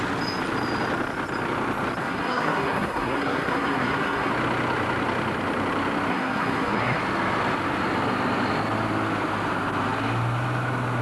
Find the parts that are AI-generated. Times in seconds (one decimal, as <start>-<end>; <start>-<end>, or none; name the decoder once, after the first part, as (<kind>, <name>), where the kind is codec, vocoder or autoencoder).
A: 2.0-4.3 (codec, SNAC); 6.1-7.0